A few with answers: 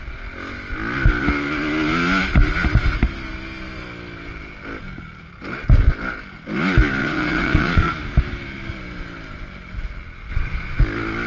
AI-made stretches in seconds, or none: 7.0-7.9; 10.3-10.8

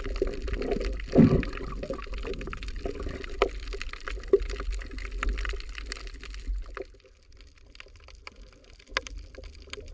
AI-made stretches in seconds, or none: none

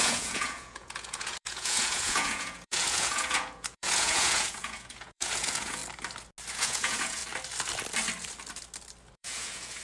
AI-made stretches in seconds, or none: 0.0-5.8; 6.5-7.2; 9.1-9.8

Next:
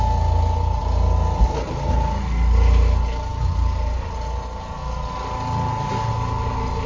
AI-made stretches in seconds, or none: none

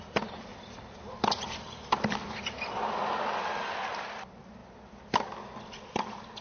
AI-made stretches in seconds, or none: 0.5-3.6

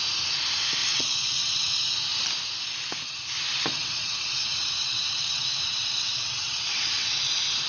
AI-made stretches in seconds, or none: 0.8-1.7; 3.7-7.2

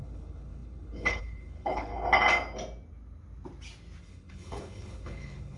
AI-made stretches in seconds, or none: 0.0-1.9; 4.0-5.6